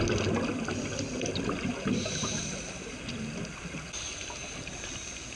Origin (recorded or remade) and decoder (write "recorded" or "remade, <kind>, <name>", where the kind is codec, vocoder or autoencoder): recorded